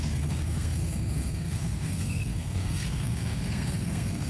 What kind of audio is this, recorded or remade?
remade